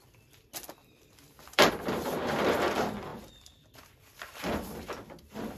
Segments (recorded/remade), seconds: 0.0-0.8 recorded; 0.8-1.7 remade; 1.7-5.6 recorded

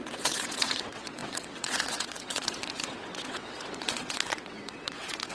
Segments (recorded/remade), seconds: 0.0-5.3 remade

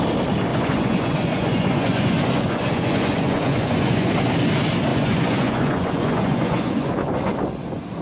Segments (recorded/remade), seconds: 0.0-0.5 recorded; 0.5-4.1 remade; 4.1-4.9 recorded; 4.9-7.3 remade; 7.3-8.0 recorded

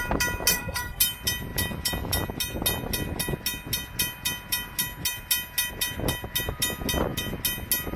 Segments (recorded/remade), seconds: 0.0-0.5 recorded; 0.5-1.0 remade; 1.0-8.0 recorded